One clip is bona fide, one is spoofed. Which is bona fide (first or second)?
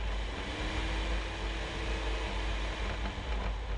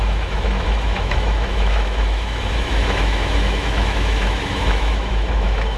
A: first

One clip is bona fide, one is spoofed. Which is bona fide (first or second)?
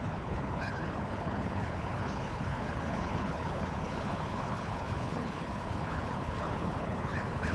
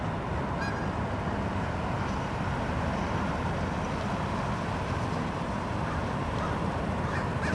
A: second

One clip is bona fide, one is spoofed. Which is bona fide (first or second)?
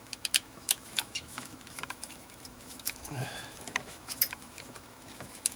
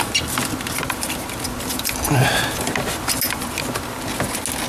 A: second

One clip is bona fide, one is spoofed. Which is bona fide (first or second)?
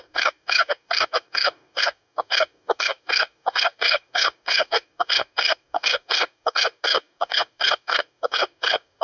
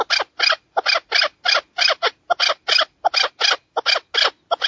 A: second